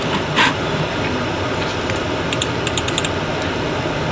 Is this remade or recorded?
recorded